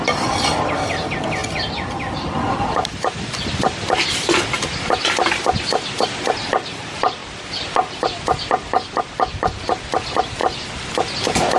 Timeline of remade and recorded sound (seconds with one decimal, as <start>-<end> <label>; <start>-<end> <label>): 0.0-11.6 recorded